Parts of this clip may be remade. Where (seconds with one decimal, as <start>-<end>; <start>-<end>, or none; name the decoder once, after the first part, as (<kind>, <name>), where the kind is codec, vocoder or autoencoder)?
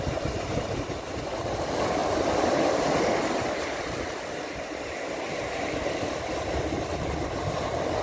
2.0-5.7 (vocoder, BigVGAN v2)